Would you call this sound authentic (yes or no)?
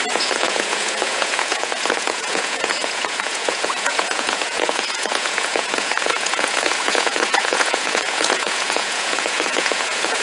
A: no